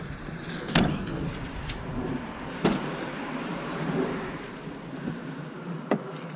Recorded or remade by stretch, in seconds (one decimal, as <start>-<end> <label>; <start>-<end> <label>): 0.0-1.3 recorded; 1.3-5.1 remade; 5.1-6.4 recorded